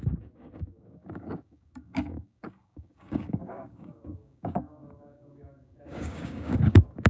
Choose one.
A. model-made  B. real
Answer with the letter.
A